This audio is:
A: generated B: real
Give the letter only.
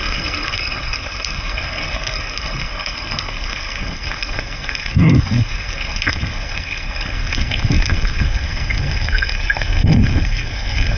A